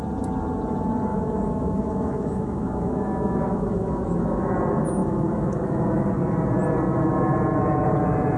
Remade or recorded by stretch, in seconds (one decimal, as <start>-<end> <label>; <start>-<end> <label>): 0.0-1.1 recorded; 1.1-4.5 remade; 4.5-5.0 recorded; 5.0-6.1 remade; 6.1-8.4 recorded